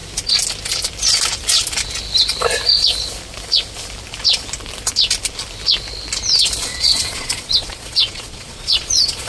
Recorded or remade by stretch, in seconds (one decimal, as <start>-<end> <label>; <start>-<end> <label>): 0.0-6.7 recorded; 6.7-9.3 remade

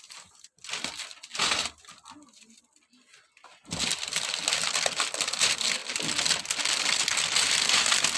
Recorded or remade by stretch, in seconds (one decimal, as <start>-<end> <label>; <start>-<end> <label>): 0.0-8.2 recorded